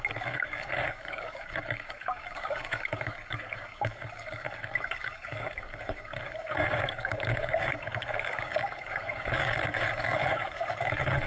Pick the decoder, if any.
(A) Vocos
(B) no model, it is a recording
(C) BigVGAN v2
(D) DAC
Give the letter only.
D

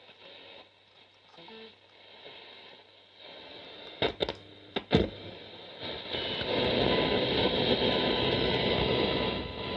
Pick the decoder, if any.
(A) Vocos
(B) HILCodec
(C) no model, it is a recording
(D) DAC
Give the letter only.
C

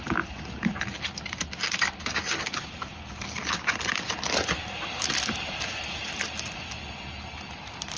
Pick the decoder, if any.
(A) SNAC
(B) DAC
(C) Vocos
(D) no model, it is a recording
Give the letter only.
D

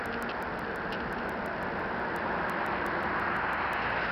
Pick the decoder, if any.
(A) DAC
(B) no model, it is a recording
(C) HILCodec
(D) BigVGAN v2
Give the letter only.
B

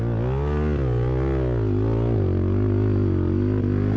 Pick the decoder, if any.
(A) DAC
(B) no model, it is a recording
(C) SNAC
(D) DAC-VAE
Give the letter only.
B